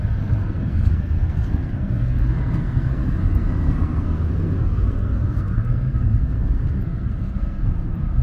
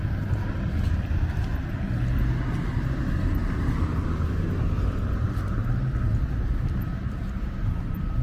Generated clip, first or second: first